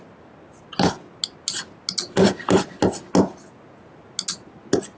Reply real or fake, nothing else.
real